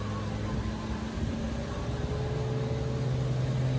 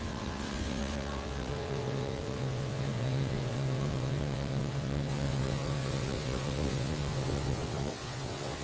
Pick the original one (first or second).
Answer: first